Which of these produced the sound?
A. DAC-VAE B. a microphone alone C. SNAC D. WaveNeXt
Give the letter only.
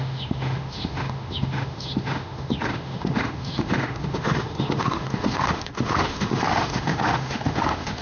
A